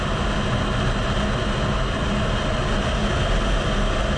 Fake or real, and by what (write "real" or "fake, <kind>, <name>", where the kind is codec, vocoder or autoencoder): real